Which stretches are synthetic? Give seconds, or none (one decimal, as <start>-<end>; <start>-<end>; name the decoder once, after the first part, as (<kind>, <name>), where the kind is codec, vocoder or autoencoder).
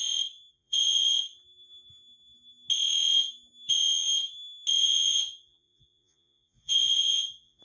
0.5-1.1 (vocoder, Vocos); 4.8-7.6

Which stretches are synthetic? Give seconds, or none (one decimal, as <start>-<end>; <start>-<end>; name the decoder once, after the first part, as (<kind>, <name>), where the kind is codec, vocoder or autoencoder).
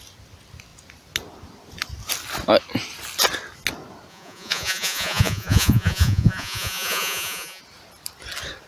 4.1-7.6 (vocoder, Vocos)